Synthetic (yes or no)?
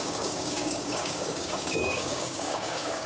yes